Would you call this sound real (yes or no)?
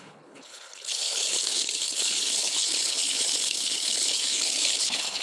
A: no